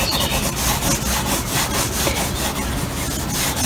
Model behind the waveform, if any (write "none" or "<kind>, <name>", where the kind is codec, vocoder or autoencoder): none